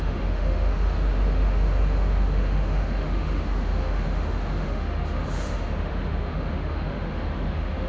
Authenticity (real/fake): fake